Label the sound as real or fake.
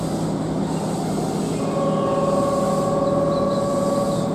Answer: real